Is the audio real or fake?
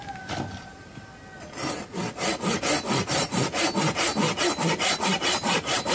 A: real